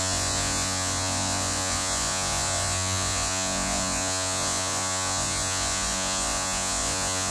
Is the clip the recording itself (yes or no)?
no